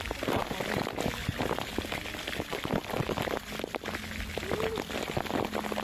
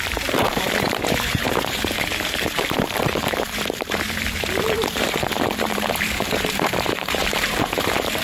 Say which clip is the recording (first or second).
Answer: first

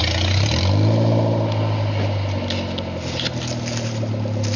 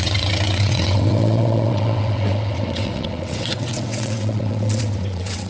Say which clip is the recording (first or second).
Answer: first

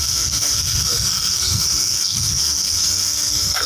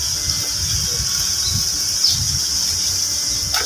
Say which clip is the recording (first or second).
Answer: second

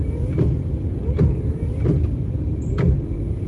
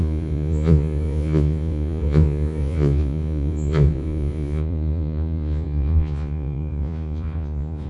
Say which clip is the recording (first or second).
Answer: first